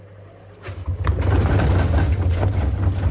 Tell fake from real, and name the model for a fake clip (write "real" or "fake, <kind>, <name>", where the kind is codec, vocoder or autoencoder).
real